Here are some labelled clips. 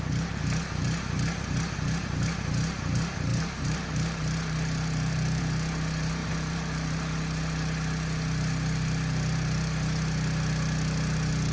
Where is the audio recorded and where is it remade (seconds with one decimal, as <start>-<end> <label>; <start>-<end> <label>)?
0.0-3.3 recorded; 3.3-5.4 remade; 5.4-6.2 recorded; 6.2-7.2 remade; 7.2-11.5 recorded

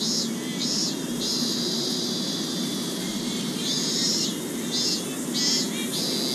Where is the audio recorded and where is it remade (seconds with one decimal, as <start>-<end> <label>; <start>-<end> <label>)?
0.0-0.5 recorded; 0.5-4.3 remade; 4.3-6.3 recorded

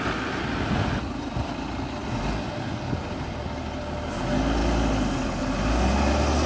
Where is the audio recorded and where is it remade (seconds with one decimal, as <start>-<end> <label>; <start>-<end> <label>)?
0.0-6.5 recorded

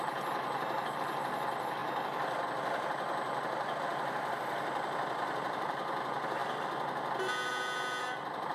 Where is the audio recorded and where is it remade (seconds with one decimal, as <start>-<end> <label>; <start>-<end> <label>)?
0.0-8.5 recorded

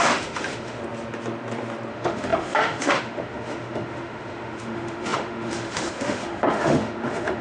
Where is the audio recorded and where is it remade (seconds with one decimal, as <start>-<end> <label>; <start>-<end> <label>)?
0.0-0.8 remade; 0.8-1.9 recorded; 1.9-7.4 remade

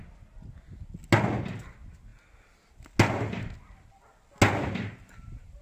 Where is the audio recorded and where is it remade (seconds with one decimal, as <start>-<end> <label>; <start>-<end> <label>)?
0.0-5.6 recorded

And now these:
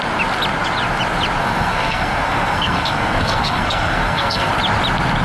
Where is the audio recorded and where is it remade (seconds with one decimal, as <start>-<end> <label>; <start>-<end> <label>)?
0.0-1.4 recorded; 1.4-4.5 remade; 4.5-5.2 recorded

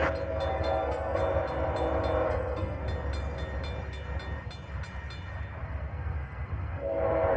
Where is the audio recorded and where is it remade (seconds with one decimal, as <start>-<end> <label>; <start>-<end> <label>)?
0.0-0.5 recorded; 0.5-1.2 remade; 1.2-2.3 recorded; 2.3-2.8 remade; 2.8-5.6 recorded; 5.6-7.4 remade